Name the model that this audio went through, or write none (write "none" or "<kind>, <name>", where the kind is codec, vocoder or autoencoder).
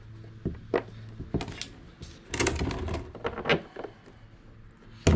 none